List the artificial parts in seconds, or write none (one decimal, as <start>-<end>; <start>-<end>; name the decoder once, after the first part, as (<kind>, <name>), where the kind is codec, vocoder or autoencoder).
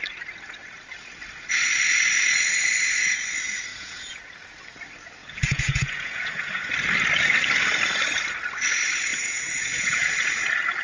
3.7-4.2 (vocoder, Vocos); 5.2-6.7; 9.1-10.1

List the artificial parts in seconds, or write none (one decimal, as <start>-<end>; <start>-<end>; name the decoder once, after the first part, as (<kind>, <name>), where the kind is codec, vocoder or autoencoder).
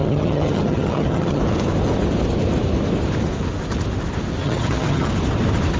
0.0-1.4 (vocoder, HiFi-GAN); 4.4-5.1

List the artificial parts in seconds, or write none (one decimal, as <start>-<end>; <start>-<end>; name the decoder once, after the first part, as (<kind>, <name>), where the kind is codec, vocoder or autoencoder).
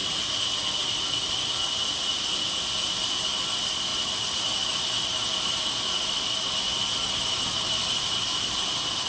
none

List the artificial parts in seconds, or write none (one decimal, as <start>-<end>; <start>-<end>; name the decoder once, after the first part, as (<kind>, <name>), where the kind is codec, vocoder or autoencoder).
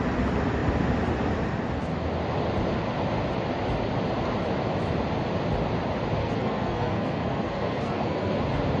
6.2-8.4 (codec, SNAC)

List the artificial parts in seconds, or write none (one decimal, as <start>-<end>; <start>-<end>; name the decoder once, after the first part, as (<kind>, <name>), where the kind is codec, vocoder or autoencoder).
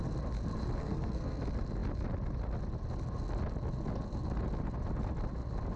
0.8-1.4 (codec, SNAC)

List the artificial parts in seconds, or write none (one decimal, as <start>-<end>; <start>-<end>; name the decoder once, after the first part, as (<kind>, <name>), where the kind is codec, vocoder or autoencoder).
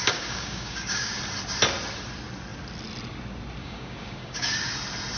0.0-1.2 (codec, DAC); 3.6-4.7